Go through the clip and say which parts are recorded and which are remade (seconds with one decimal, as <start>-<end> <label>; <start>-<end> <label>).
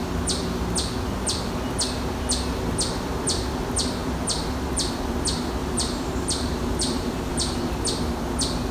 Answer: 0.0-5.6 recorded; 5.6-7.7 remade; 7.7-8.7 recorded